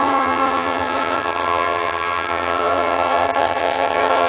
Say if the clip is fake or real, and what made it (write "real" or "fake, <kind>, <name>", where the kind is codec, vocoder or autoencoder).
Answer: fake, vocoder, HiFi-GAN